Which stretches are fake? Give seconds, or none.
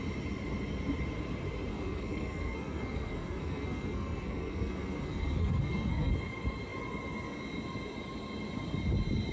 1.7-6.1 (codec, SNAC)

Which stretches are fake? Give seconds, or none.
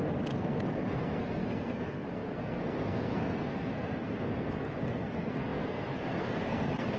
0.0-7.0 (codec, SNAC)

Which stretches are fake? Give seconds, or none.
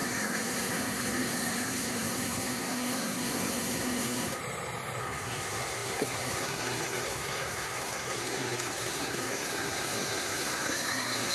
0.0-4.4 (codec, SNAC); 5.0-11.3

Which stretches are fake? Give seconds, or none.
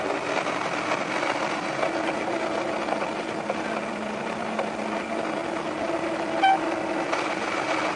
none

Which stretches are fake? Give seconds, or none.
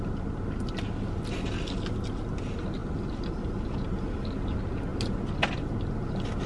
none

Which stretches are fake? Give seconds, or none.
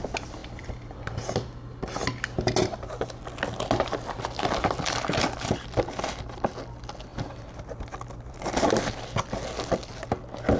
none